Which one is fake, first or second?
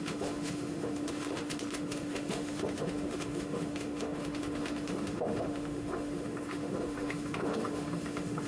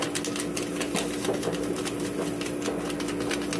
first